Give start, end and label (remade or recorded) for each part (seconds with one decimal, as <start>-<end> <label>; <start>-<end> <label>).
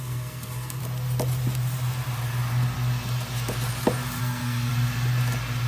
0.0-0.8 remade; 0.8-4.2 recorded; 4.2-4.7 remade; 4.7-5.7 recorded